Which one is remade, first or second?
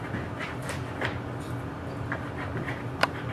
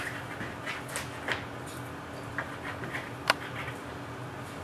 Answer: first